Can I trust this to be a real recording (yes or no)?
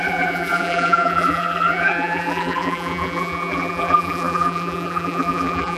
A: no